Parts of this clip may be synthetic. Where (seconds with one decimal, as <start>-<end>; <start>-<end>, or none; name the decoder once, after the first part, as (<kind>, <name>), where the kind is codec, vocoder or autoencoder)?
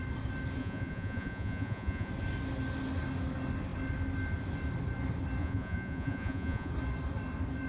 0.6-2.1 (vocoder, Vocos); 5.4-6.7